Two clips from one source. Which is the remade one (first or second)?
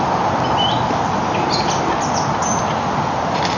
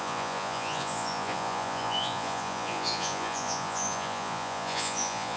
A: second